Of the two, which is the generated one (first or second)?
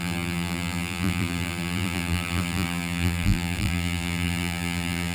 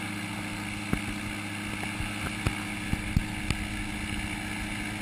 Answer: first